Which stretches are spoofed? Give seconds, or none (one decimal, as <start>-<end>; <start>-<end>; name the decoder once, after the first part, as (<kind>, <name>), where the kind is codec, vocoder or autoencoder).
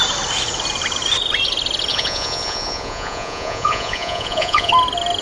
1.9-4.7 (vocoder, Vocos)